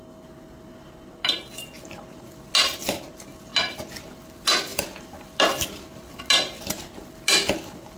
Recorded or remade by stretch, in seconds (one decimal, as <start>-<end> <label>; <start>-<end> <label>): 0.0-8.0 recorded